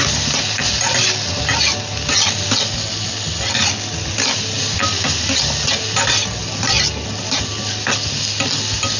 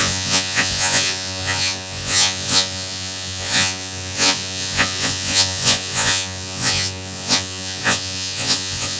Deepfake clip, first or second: second